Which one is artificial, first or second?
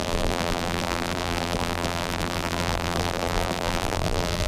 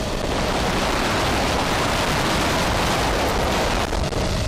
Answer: first